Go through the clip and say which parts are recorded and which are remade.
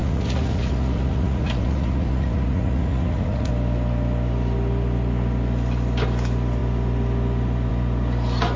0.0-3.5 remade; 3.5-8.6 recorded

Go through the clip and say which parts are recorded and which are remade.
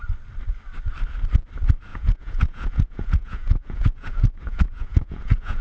0.0-1.9 recorded; 1.9-5.6 remade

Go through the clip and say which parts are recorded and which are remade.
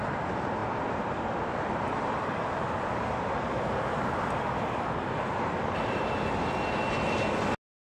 0.0-8.0 recorded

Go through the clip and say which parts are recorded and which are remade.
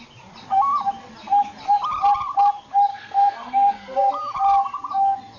0.0-2.9 recorded; 2.9-4.1 remade; 4.1-5.4 recorded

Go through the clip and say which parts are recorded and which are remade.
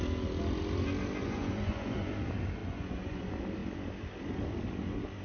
0.0-1.2 recorded; 1.2-2.1 remade; 2.1-2.6 recorded; 2.6-3.2 remade; 3.2-5.2 recorded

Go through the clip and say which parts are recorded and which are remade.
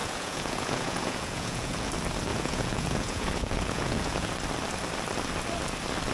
0.0-1.9 remade; 1.9-2.3 recorded; 2.3-4.3 remade; 4.3-6.1 recorded